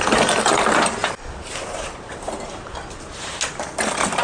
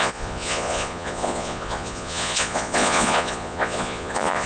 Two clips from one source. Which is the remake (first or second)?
second